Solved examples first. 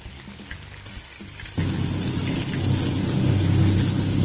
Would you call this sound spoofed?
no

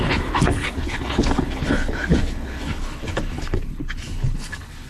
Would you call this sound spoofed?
yes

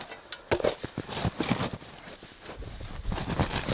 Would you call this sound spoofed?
no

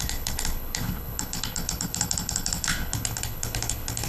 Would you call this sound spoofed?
yes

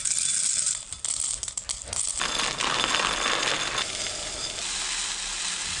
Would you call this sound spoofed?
no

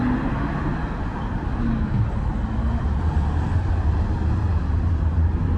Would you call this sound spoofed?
no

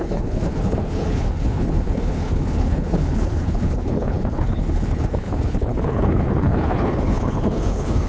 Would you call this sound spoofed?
yes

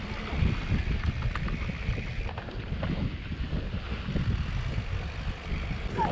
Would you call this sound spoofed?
no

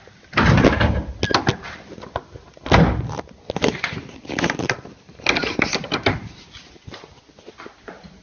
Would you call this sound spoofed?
no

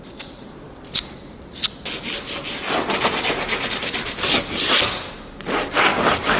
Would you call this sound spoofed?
no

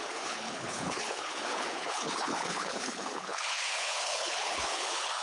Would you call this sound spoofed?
yes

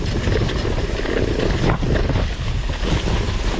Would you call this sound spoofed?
no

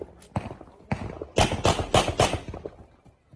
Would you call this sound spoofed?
no